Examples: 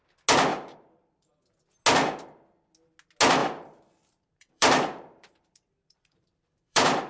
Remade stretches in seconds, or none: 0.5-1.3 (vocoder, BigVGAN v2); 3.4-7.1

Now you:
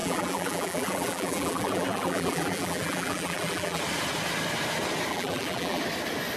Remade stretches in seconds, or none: 0.0-3.8 (vocoder, BigVGAN v2); 5.1-5.8

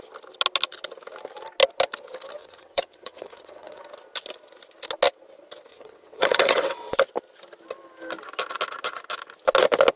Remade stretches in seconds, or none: 2.4-3.8 (vocoder, WaveNeXt); 5.7-6.9

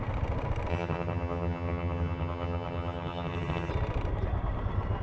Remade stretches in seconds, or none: 0.7-3.7 (vocoder, HiFi-GAN)

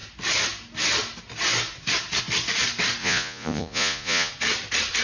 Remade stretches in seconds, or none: 3.0-4.3 (vocoder, Vocos)